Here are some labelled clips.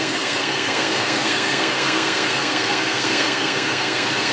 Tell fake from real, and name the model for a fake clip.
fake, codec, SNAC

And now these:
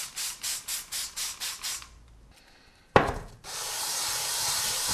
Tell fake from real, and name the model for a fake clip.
fake, vocoder, BigVGAN v2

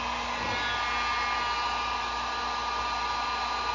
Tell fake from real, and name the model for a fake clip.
real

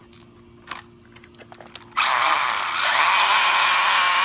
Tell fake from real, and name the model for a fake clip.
real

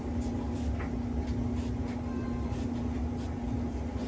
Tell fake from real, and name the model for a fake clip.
real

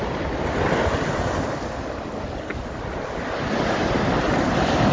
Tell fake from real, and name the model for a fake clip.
real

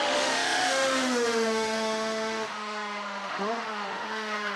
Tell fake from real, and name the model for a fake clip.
fake, autoencoder, DAC-VAE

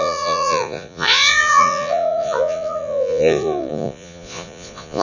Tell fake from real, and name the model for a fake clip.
fake, vocoder, Vocos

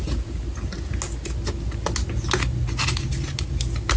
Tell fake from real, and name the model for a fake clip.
real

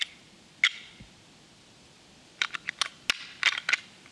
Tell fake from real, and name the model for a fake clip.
real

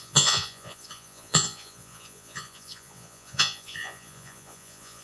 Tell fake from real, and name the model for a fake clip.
fake, vocoder, Vocos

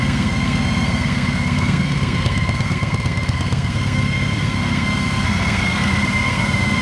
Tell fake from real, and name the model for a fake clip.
fake, codec, SNAC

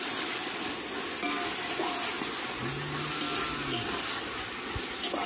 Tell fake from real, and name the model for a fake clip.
real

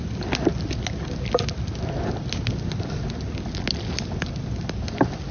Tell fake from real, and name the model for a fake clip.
real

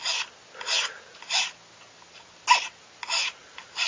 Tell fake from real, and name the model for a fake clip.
real